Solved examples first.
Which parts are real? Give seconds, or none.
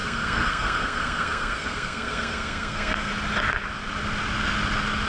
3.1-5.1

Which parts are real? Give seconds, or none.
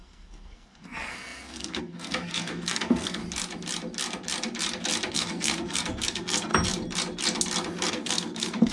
3.2-5.1; 6.5-7.9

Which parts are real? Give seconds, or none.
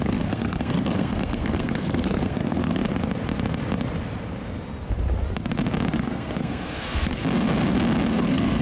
2.8-5.9; 7.2-8.1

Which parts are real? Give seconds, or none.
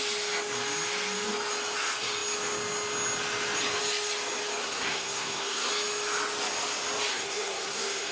0.0-4.6; 5.7-7.1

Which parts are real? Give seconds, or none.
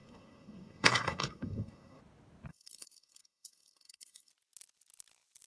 2.0-2.5; 4.3-5.5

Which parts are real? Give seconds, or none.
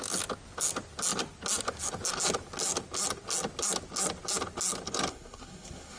0.0-5.1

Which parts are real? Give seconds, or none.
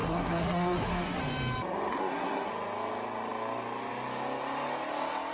1.2-1.9; 2.5-5.3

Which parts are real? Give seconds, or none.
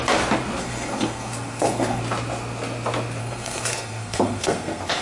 0.0-0.6; 2.0-3.2